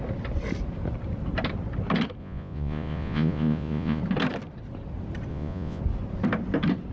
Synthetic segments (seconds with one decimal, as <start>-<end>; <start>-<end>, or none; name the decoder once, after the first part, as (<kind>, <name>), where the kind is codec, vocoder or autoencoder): 2.2-4.0 (vocoder, Vocos); 5.3-5.8